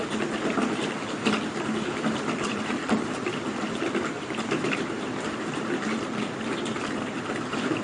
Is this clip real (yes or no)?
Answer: no